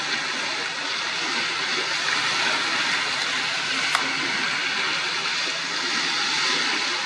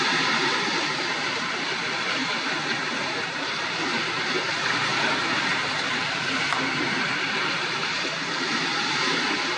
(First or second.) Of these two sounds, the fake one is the second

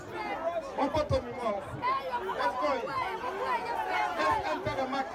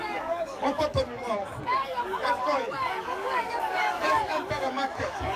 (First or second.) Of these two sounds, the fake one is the second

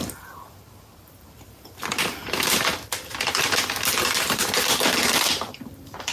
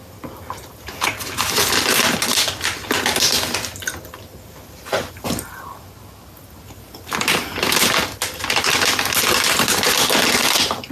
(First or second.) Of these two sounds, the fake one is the first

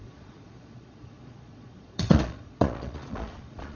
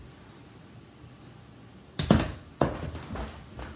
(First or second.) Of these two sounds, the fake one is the first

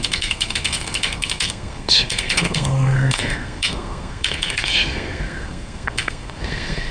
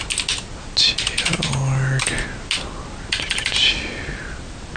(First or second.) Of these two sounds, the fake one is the first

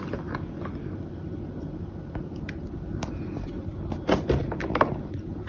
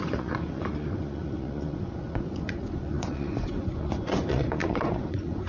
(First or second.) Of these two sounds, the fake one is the second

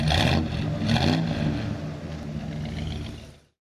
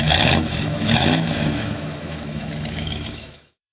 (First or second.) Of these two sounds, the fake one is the second